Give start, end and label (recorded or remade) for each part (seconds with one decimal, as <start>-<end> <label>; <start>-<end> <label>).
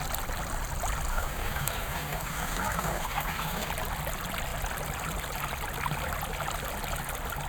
0.0-1.1 recorded; 1.1-3.7 remade; 3.7-7.5 recorded